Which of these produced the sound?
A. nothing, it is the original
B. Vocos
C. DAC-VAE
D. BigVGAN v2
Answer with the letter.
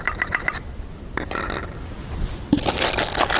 A